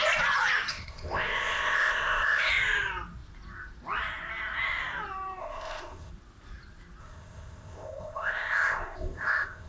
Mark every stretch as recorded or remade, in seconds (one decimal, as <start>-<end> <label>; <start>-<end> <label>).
0.0-0.7 recorded; 0.7-2.5 remade; 2.5-5.4 recorded; 5.4-6.1 remade; 6.1-7.0 recorded; 7.0-9.7 remade

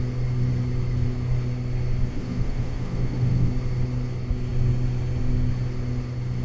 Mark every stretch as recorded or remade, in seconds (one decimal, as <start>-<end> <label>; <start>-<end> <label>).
0.0-2.1 recorded; 2.1-3.5 remade; 3.5-6.4 recorded

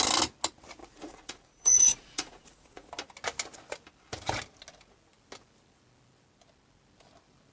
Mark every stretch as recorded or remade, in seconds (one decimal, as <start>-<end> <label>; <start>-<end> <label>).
0.0-0.8 recorded; 0.8-2.9 remade; 2.9-7.5 recorded

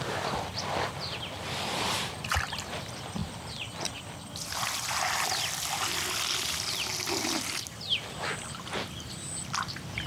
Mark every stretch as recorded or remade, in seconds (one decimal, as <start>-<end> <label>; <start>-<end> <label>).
0.0-10.1 remade

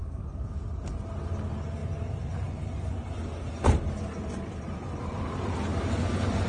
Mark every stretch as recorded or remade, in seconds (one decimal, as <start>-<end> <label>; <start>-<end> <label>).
0.0-0.6 remade; 0.6-6.5 recorded

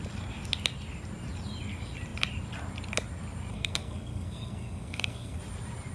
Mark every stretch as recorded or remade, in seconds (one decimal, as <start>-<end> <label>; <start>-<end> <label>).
0.0-3.5 recorded; 3.5-5.4 remade; 5.4-5.9 recorded

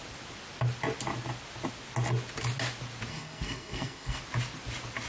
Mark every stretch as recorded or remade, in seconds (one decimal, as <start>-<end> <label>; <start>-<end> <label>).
0.0-3.1 recorded; 3.1-4.2 remade; 4.2-5.1 recorded